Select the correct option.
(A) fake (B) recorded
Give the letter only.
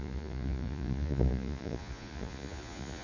A